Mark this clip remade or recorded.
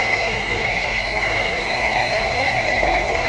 remade